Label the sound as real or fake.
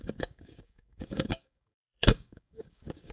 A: fake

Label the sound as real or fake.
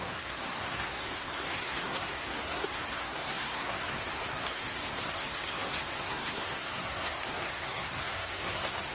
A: fake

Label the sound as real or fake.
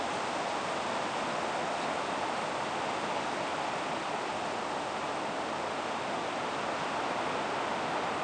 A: real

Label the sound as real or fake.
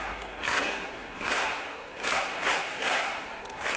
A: fake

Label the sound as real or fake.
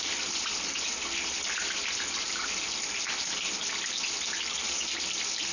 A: real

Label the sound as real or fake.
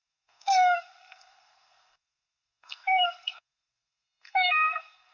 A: fake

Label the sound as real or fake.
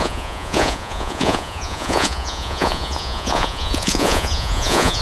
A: fake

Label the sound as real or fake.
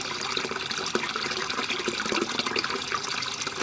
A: real